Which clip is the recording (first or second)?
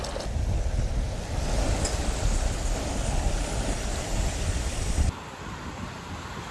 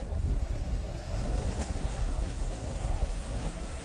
first